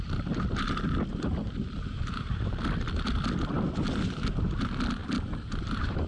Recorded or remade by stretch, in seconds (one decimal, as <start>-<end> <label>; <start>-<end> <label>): 0.0-1.1 recorded; 1.1-2.6 remade; 2.6-5.0 recorded; 5.0-6.1 remade